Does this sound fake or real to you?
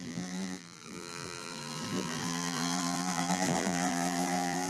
fake